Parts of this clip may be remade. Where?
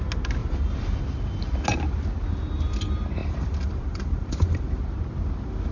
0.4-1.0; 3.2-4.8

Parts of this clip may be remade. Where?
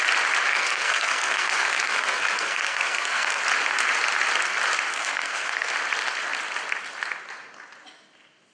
0.5-3.4; 4.9-5.7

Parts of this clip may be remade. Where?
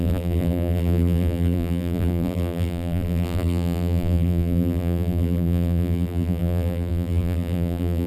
0.0-8.1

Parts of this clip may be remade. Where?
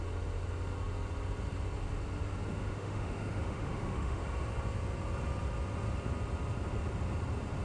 2.5-4.2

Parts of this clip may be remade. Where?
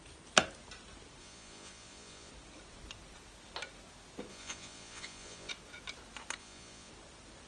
1.2-2.3; 4.3-5.5; 6.4-6.9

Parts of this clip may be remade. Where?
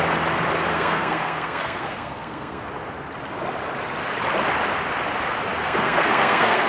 0.7-2.7; 5.6-6.7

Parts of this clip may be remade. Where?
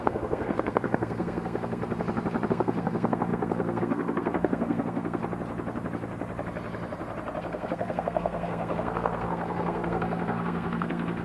0.0-1.8; 2.5-5.2; 7.4-11.2